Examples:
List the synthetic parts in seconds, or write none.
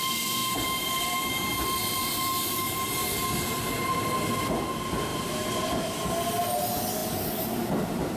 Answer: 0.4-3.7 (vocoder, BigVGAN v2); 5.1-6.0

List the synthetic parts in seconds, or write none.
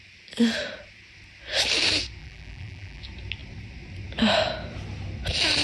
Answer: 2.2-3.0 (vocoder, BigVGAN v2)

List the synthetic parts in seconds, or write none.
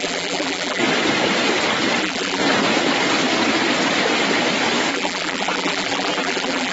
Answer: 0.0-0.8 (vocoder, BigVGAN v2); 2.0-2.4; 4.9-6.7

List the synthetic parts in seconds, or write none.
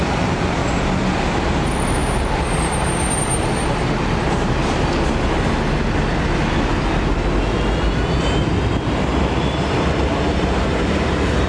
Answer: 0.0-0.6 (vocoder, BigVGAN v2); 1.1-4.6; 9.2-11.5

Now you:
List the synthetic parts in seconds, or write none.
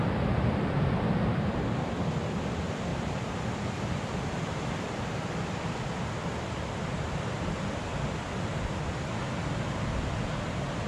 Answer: 2.9-7.2 (vocoder, BigVGAN v2)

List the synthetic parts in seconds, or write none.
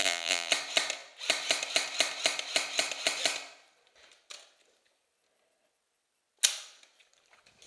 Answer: 0.0-0.5 (vocoder, BigVGAN v2)